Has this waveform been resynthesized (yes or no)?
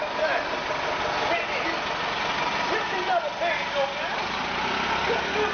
no